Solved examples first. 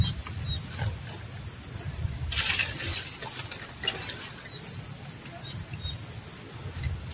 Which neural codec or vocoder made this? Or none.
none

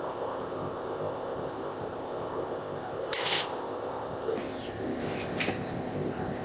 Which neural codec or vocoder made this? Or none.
codec, ZipCodec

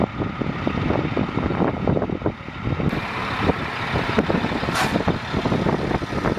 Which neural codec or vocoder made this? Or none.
none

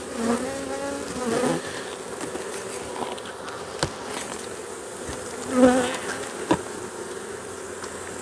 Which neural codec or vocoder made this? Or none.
none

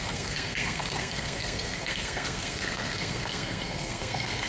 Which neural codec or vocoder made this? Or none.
codec, SNAC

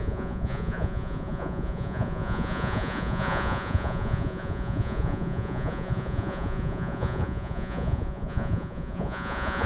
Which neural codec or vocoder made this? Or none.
vocoder, Vocos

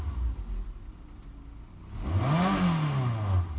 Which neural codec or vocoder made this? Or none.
none